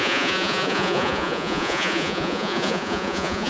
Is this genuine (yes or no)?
no